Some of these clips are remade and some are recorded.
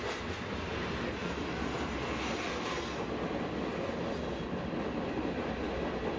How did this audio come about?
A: recorded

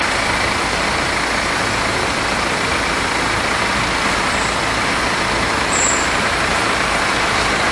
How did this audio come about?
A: recorded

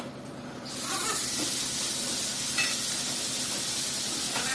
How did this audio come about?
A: recorded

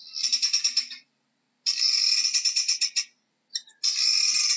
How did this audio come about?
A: recorded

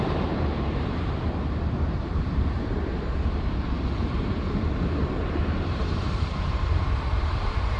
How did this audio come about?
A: remade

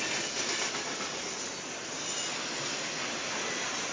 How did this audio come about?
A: recorded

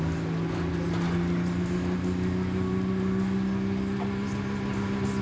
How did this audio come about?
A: recorded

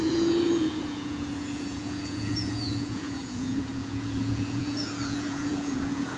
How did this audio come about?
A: remade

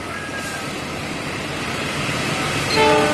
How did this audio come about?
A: recorded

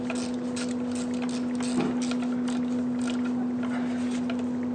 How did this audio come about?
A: recorded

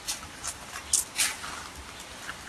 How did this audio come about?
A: recorded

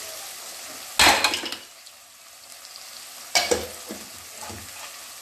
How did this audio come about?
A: recorded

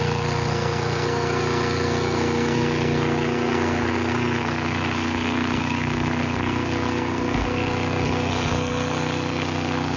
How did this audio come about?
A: remade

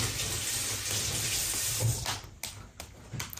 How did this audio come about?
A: recorded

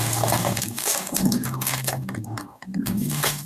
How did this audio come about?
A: remade